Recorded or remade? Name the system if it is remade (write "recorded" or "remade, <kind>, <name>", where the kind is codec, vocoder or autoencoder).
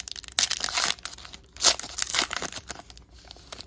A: recorded